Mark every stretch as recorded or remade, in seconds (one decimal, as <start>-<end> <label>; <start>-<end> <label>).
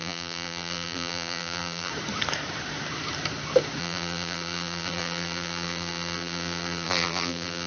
0.0-1.9 remade; 1.9-3.8 recorded; 3.8-7.7 remade